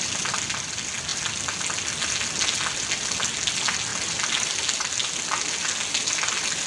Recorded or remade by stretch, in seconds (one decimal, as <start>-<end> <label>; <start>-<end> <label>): 0.0-6.7 recorded